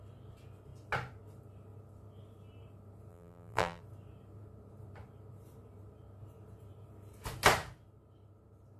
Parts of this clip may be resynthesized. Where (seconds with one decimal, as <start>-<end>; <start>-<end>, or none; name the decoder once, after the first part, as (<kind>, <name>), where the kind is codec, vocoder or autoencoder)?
3.1-3.8 (vocoder, BigVGAN v2)